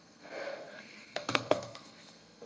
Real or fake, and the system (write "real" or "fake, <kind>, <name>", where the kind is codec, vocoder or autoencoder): fake, codec, SNAC